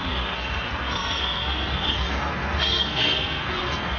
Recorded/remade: remade